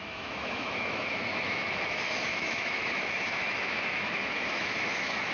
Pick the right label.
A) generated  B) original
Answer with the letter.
A